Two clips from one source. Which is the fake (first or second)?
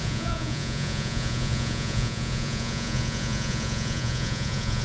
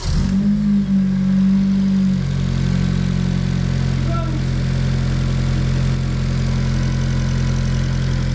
first